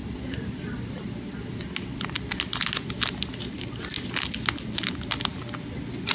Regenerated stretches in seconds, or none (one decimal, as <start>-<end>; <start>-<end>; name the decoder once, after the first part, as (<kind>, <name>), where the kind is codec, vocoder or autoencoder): none